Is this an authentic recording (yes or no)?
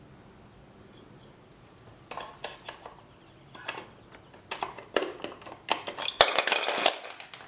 yes